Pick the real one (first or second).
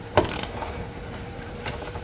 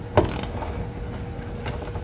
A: second